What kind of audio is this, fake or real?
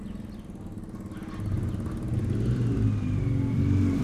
real